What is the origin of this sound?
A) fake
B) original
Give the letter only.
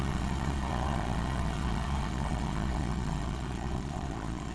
A